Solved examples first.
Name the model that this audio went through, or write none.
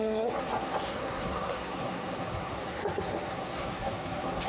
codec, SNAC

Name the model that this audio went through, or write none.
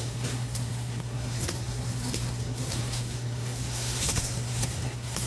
codec, SNAC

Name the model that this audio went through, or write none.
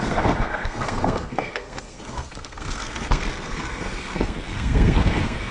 codec, SNAC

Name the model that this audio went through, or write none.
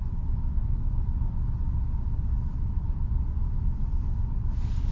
none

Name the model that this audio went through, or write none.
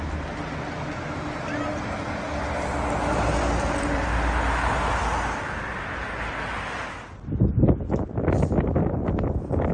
none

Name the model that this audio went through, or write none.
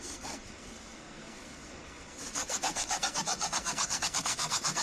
codec, SNAC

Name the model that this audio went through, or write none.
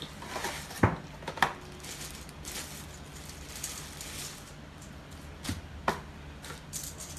none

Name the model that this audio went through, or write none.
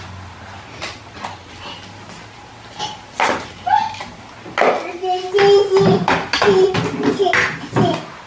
none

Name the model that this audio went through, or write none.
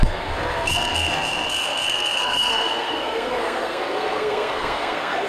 codec, SNAC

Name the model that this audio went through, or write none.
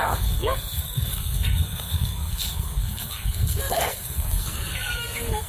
codec, SNAC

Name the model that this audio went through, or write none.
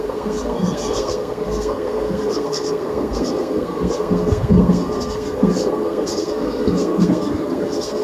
codec, SNAC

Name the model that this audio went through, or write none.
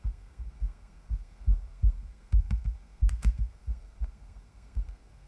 codec, SNAC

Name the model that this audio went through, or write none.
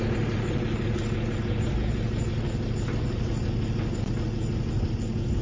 none